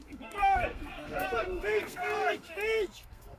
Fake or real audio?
fake